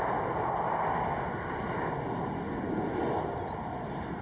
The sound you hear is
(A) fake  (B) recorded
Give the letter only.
B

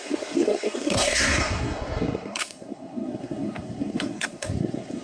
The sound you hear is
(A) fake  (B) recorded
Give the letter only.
A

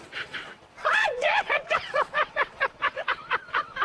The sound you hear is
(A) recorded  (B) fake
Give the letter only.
B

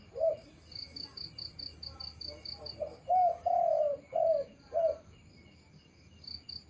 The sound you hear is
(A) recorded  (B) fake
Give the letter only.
A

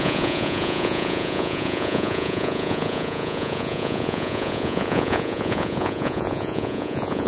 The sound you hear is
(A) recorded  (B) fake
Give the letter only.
B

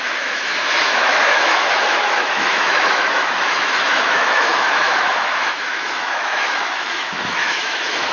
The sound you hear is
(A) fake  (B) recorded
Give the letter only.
A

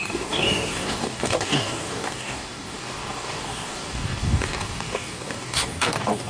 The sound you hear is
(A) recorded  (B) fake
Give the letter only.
B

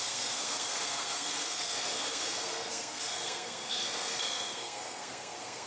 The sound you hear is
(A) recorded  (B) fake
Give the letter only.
B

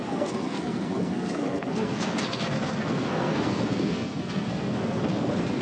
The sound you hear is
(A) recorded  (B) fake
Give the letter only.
B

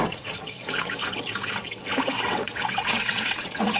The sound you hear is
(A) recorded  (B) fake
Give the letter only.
B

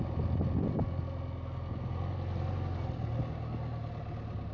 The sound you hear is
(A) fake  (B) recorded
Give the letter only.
B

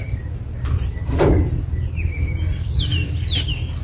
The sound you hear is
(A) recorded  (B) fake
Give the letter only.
A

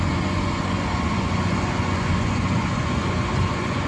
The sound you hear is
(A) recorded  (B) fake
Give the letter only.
B